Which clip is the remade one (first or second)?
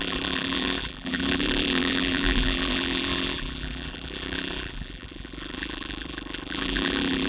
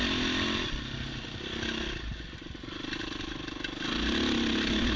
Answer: first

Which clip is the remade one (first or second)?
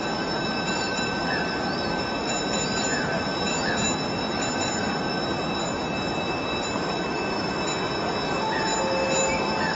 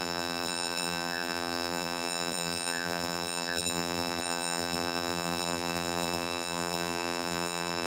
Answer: second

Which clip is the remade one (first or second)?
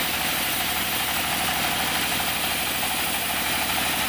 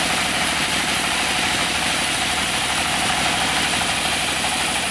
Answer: second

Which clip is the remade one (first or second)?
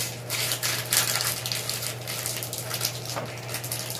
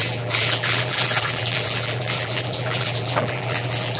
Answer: second